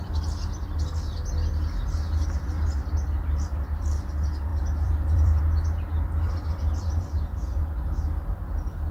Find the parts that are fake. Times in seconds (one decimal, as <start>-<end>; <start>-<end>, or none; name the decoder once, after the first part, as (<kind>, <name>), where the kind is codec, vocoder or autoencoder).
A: 4.5-5.4 (vocoder, BigVGAN v2)